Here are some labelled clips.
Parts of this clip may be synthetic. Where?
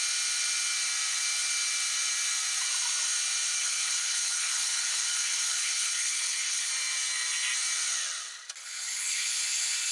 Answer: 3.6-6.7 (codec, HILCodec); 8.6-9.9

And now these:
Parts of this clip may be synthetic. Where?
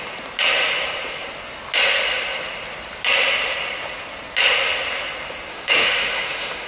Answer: 5.5-6.7 (autoencoder, DAC-VAE)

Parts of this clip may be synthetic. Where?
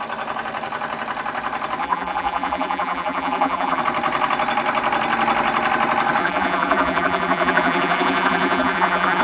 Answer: 1.8-3.8 (vocoder, BigVGAN v2); 6.2-9.2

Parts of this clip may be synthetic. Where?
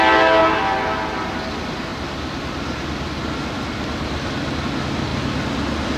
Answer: none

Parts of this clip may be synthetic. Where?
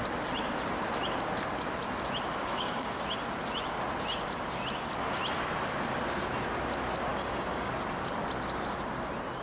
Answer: 2.4-3.0 (codec, DAC); 7.1-7.7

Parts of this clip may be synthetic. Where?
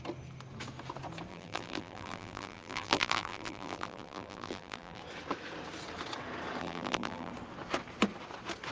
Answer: 1.3-5.0 (vocoder, BigVGAN v2); 6.6-7.3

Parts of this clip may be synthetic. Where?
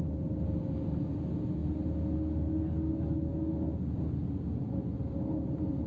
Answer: none